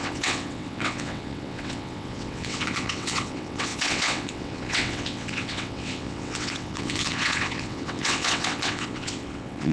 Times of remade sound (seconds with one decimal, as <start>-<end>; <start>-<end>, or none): 0.0-9.7